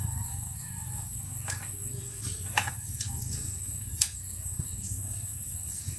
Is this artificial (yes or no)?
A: yes